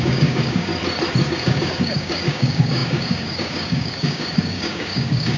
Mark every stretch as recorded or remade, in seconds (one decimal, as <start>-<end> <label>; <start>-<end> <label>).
0.0-0.7 remade; 0.7-1.3 recorded; 1.3-5.4 remade